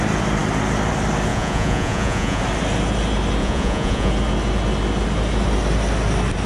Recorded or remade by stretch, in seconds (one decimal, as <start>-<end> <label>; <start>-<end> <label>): 0.0-1.3 recorded; 1.3-2.4 remade; 2.4-3.4 recorded; 3.4-4.1 remade; 4.1-6.5 recorded